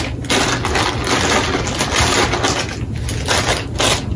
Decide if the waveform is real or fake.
real